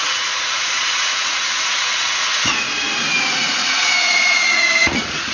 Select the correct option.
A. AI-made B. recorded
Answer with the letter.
A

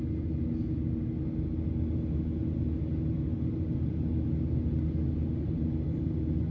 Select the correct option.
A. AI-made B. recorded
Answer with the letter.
B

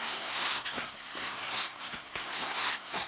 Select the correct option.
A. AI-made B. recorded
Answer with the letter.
A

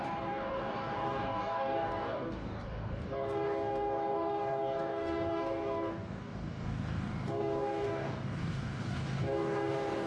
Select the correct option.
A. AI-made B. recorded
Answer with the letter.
A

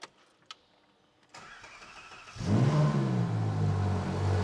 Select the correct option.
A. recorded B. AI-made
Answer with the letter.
A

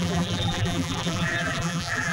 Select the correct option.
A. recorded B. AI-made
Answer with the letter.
B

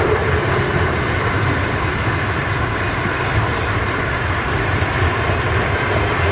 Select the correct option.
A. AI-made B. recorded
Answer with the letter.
B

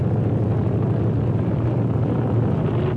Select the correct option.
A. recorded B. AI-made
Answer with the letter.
A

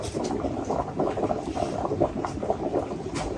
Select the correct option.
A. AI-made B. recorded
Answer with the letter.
B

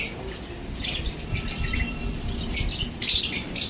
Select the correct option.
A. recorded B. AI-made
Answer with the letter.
A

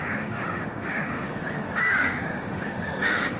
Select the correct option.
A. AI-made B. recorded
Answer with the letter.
A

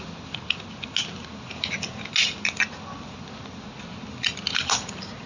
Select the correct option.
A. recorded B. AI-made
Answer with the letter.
A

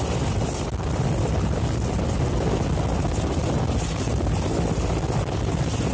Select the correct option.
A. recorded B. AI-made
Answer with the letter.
A